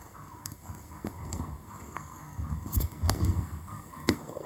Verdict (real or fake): fake